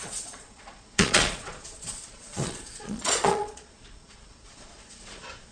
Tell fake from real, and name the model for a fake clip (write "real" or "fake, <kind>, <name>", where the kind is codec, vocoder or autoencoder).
fake, vocoder, Vocos